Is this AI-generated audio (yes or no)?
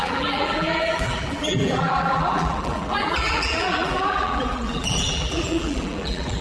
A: yes